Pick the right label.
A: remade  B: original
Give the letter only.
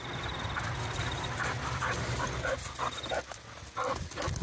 B